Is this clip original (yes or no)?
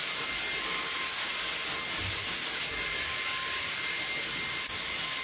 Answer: yes